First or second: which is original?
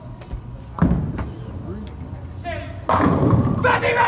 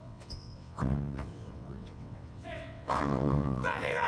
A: first